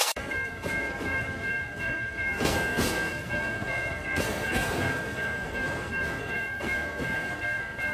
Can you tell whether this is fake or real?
fake